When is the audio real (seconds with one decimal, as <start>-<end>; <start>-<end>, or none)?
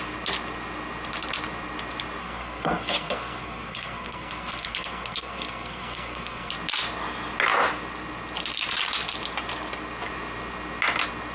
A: 0.0-2.2; 6.5-11.3